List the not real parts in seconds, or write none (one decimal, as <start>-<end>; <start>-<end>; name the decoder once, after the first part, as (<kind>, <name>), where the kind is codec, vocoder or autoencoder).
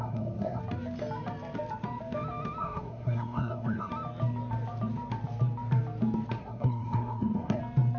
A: 0.0-0.6 (codec, SNAC); 2.6-3.9; 6.4-7.6